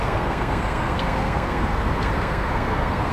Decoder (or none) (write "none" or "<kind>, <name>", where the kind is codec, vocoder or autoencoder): codec, SNAC